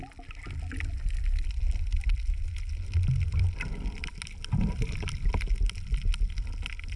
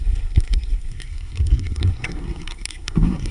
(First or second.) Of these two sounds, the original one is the first